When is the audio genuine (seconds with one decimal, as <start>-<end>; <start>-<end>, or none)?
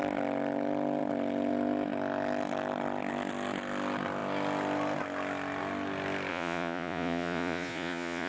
0.0-6.3